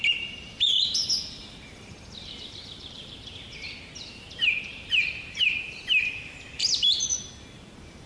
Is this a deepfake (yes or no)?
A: yes